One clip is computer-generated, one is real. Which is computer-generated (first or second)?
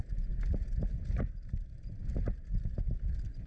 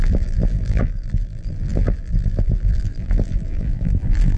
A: second